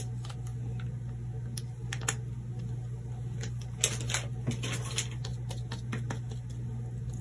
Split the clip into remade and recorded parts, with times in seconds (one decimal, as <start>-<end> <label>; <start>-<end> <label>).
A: 0.0-7.2 recorded